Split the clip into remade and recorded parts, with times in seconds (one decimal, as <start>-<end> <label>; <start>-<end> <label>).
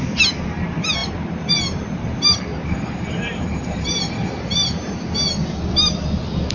0.0-1.0 recorded; 1.0-4.9 remade; 4.9-6.5 recorded